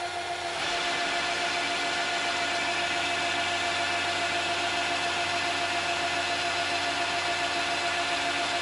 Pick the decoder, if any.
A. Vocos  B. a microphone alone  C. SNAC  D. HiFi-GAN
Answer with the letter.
B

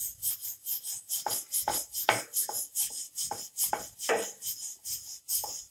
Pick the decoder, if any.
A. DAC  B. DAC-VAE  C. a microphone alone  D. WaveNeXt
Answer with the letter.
C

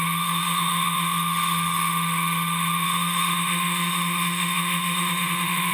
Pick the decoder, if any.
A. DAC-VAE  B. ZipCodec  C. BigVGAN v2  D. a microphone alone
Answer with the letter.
A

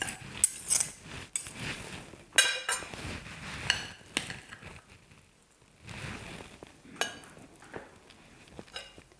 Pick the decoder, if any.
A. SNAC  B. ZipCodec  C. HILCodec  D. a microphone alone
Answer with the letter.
D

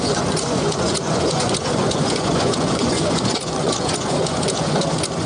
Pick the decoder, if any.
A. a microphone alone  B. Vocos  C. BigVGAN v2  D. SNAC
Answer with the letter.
B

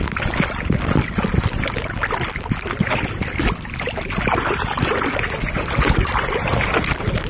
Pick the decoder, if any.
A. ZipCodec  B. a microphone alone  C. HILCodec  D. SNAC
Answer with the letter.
B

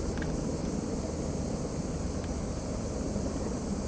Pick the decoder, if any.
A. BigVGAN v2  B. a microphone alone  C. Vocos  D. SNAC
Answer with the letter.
B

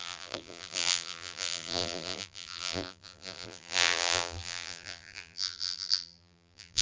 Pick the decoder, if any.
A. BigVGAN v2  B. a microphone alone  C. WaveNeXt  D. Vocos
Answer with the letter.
A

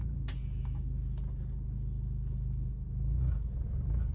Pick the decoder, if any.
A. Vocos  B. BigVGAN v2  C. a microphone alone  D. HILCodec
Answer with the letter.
C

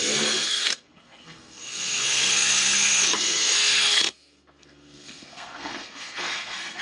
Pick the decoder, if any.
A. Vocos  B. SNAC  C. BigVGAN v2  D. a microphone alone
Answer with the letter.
B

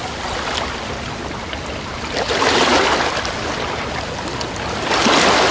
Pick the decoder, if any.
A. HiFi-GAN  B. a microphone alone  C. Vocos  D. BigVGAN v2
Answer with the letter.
B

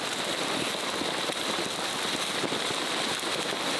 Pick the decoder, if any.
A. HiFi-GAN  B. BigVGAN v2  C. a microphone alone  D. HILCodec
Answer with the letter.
C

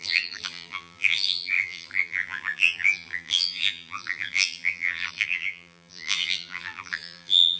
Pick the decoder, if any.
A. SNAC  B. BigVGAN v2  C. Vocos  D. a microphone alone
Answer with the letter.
B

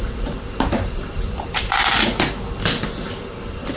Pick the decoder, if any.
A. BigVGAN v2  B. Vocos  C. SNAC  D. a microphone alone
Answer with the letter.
A